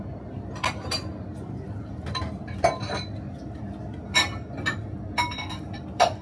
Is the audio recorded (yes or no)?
yes